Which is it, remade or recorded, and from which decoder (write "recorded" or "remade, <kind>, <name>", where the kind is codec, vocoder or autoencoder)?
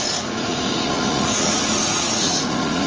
remade, vocoder, Vocos